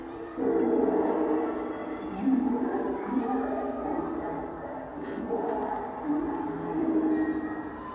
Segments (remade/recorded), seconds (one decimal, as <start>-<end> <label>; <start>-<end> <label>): 0.0-4.9 remade; 4.9-5.7 recorded; 5.7-7.9 remade